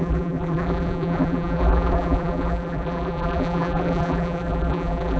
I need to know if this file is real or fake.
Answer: fake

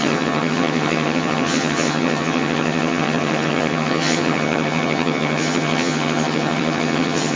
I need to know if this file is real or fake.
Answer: fake